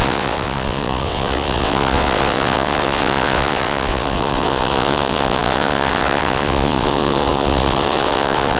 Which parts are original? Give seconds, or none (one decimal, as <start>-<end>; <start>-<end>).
none